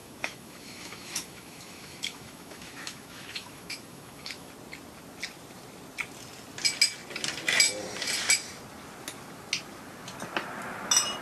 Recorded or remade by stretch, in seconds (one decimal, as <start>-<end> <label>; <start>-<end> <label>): 0.0-4.5 remade; 4.5-11.2 recorded